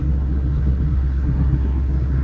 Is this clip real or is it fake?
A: fake